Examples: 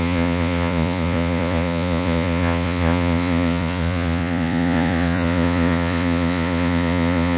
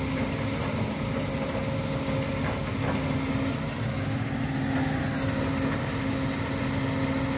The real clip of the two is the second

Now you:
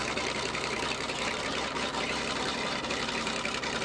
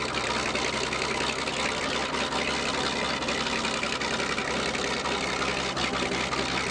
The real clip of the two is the second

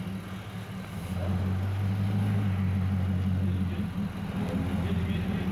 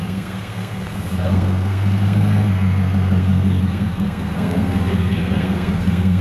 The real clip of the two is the first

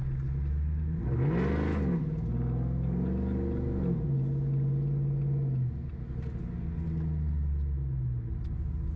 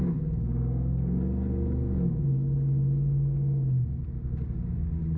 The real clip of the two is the first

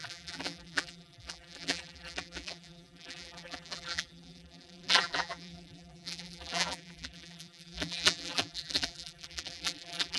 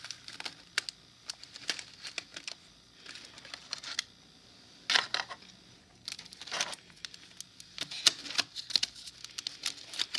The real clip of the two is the second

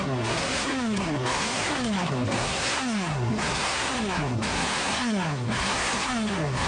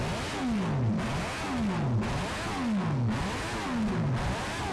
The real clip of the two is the second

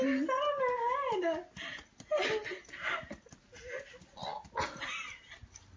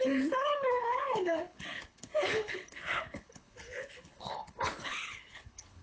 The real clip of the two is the first